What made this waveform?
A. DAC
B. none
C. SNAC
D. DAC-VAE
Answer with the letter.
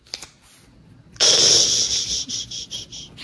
B